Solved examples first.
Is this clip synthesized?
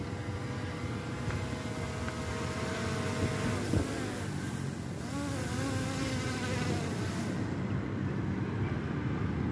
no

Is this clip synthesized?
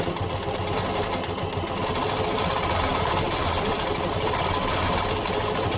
no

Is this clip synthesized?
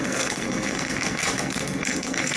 yes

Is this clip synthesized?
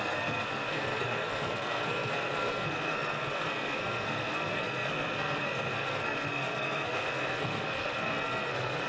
yes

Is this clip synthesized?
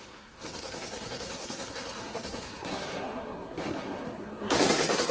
yes